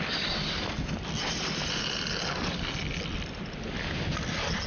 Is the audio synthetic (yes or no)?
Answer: no